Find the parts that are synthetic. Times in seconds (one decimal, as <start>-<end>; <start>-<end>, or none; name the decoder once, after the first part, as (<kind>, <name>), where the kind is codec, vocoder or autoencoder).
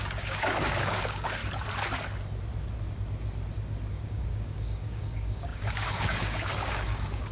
0.0-1.4 (codec, DAC); 3.9-7.3